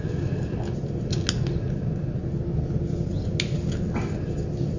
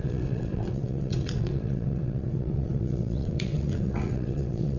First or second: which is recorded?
first